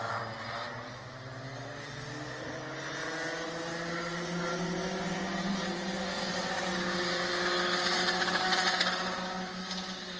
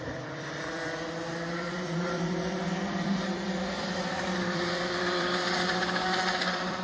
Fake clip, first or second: second